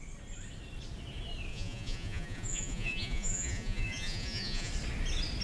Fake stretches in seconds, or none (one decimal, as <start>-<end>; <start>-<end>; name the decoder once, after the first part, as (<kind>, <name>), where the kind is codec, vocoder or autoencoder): 1.5-4.7 (vocoder, Vocos)